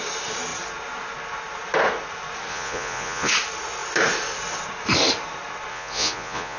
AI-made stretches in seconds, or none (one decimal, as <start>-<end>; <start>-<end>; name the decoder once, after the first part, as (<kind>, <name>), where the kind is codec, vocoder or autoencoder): 2.5-3.3 (vocoder, Vocos); 5.7-6.6